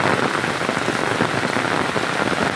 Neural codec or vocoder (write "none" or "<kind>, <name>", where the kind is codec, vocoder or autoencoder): none